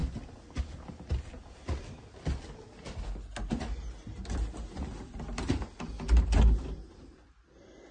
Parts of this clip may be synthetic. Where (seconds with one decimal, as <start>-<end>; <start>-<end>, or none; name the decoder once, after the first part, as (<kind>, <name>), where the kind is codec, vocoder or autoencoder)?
0.0-0.6 (vocoder, BigVGAN v2)